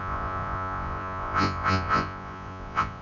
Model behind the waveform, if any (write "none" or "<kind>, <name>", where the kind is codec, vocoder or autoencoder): vocoder, Vocos